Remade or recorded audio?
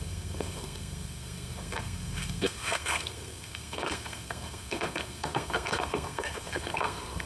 remade